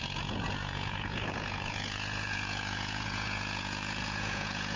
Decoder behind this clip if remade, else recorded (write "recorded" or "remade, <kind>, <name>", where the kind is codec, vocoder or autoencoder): remade, vocoder, Vocos